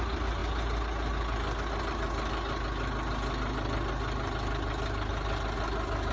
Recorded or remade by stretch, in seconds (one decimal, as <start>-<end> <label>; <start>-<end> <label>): 0.0-6.1 recorded